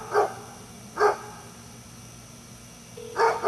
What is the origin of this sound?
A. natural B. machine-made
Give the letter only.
A